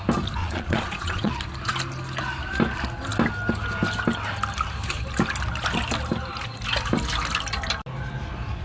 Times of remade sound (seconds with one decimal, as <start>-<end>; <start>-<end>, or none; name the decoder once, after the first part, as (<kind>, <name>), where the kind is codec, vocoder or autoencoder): 0.4-1.3 (vocoder, Vocos)